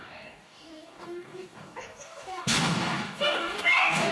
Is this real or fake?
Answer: fake